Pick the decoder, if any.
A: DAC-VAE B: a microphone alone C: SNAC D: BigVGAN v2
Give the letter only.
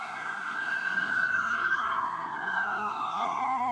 C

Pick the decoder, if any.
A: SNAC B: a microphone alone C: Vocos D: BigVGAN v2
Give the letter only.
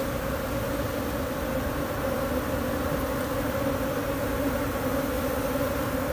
B